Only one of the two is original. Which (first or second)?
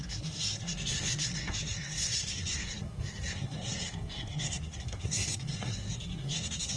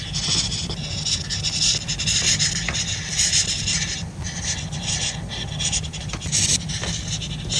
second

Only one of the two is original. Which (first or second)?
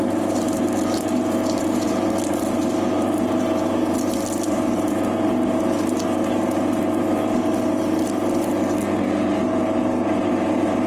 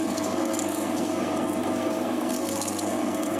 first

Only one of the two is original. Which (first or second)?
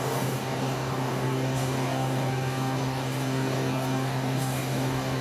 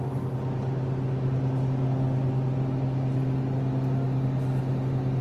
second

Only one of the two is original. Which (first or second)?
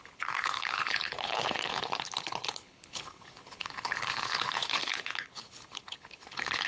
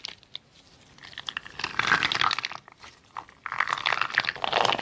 second